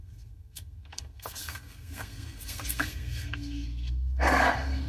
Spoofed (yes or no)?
yes